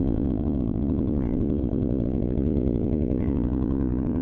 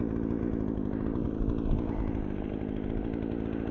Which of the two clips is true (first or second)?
second